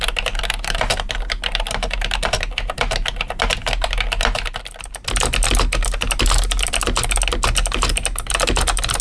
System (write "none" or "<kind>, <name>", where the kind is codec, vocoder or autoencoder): none